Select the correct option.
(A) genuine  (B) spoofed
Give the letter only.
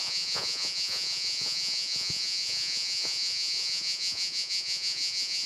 B